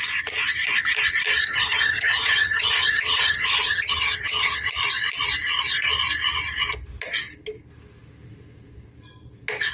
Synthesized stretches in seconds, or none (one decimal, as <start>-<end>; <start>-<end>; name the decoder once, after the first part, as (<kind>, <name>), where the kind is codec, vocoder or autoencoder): 1.5-4.7 (vocoder, HiFi-GAN)